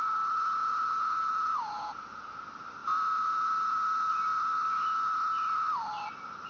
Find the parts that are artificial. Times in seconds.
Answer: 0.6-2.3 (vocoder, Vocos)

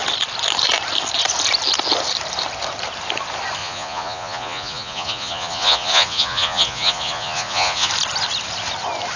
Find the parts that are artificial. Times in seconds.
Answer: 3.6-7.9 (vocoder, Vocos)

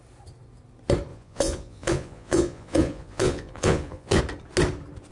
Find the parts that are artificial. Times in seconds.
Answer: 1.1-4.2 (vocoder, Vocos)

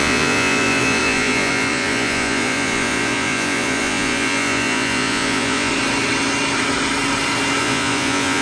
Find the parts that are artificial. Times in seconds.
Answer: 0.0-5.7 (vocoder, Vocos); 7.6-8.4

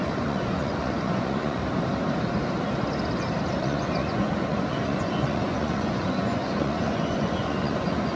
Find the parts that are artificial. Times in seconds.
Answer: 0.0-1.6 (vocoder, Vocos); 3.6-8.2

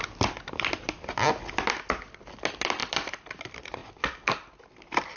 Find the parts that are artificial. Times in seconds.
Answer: none

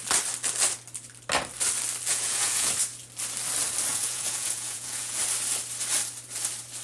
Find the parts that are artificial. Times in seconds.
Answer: 2.1-2.7 (vocoder, Vocos); 3.9-5.2

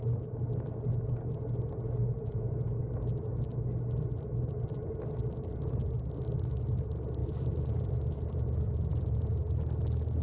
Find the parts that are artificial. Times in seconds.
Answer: 2.0-2.5 (vocoder, Vocos); 7.2-9.4